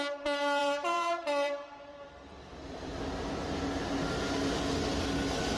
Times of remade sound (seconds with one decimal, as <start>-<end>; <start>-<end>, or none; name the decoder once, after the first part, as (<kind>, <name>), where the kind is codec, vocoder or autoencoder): 0.6-3.0 (vocoder, BigVGAN v2)